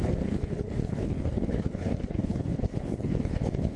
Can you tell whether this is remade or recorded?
remade